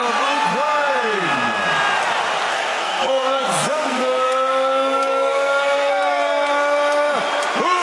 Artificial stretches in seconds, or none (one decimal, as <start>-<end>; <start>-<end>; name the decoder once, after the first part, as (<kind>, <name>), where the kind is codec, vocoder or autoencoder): 2.5-5.9 (codec, SNAC)